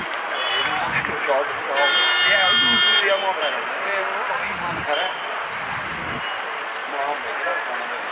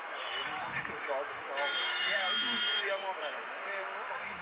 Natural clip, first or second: first